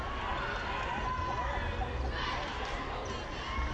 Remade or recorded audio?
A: recorded